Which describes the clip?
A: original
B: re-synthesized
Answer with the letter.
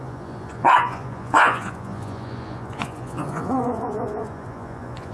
B